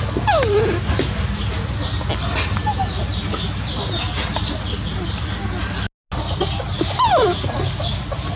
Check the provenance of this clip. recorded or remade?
recorded